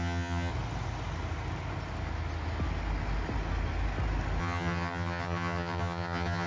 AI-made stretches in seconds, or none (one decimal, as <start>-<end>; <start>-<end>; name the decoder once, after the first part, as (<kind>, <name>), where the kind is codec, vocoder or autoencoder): 0.0-0.5 (vocoder, HiFi-GAN); 4.4-6.5